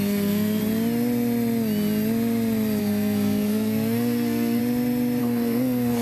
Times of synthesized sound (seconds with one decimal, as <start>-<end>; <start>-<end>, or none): 0.0-0.6; 2.8-4.6; 5.2-6.0